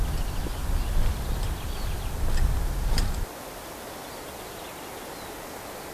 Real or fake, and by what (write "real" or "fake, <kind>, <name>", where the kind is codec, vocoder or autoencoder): real